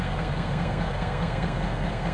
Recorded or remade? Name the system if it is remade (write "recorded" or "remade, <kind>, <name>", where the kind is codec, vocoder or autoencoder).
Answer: remade, codec, SNAC